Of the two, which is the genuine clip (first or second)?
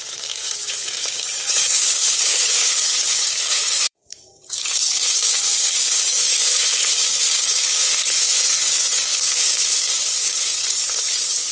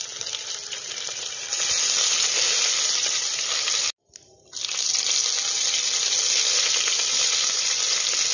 second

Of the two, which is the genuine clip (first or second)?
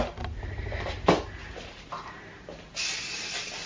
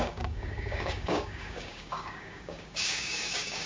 first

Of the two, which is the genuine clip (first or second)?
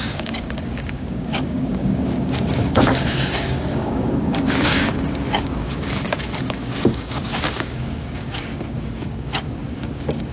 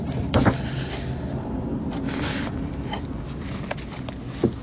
second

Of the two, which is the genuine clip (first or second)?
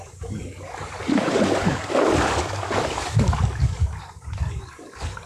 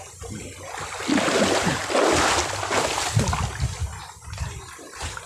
second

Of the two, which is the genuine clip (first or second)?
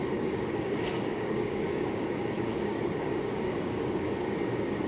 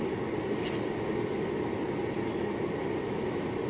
second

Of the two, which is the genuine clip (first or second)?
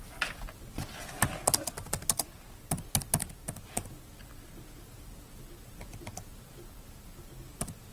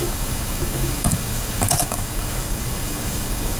first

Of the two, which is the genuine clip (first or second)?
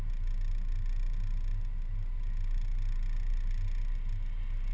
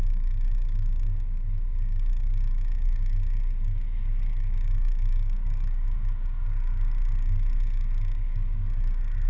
first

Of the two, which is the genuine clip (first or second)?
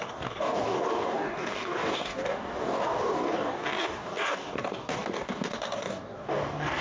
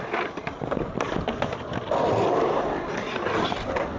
second